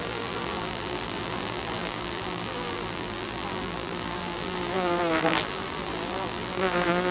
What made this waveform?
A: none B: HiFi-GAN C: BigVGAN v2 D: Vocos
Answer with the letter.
C